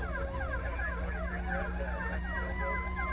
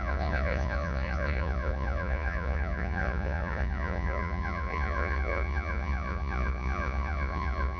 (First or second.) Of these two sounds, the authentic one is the first